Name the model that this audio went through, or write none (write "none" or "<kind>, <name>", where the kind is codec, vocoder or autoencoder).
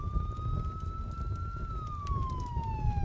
none